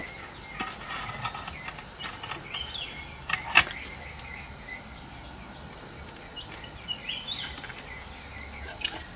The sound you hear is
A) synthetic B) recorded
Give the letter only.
B